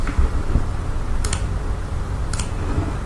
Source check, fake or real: real